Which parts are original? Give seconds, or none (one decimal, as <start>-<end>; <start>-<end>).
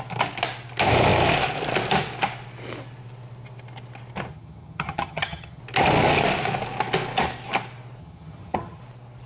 0.0-4.3; 5.6-8.0; 8.8-9.3